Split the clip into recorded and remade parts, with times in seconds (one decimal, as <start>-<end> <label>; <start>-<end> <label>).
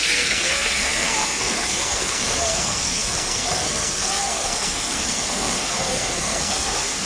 0.0-7.1 remade